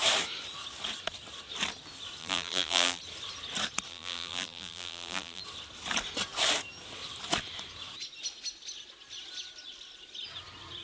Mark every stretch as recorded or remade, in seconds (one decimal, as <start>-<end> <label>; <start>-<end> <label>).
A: 0.0-2.2 recorded; 2.2-3.0 remade; 3.0-3.9 recorded; 3.9-5.4 remade; 5.4-10.8 recorded